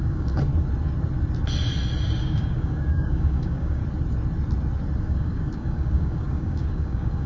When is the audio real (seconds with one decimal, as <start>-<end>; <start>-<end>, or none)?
0.5-2.0; 3.8-5.0